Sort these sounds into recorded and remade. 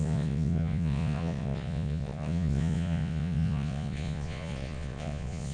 remade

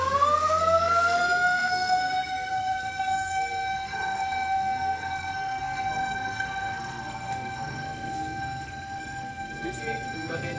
remade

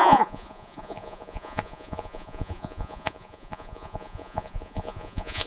remade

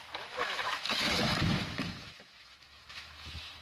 remade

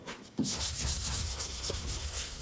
remade